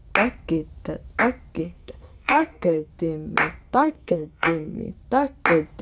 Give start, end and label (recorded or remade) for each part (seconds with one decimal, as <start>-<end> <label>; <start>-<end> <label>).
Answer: 0.0-1.6 recorded; 1.6-2.9 remade; 2.9-3.7 recorded; 3.7-4.9 remade; 4.9-5.8 recorded